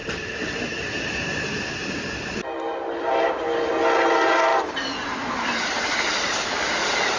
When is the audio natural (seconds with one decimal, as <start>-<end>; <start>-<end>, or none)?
3.7-4.5